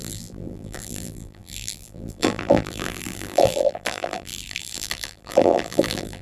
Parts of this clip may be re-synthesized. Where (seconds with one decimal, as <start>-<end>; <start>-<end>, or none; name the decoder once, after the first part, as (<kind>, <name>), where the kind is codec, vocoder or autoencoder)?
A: 0.0-6.2 (vocoder, BigVGAN v2)